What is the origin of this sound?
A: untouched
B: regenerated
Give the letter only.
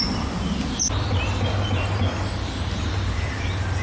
A